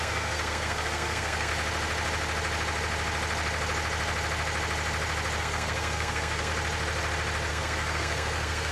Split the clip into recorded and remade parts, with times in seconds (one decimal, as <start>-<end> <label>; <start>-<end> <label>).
0.0-1.5 remade; 1.5-5.4 recorded; 5.4-6.5 remade; 6.5-7.5 recorded; 7.5-8.7 remade